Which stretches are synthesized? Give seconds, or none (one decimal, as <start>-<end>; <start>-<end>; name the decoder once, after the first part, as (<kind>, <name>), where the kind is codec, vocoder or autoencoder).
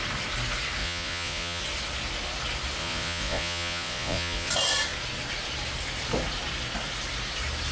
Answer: 0.8-1.6 (vocoder, Vocos); 2.8-4.5